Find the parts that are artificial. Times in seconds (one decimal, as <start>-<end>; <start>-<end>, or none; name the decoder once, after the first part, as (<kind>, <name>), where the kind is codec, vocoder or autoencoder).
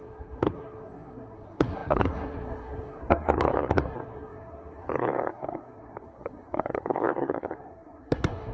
0.0-8.5 (codec, SNAC)